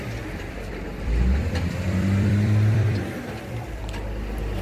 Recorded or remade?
remade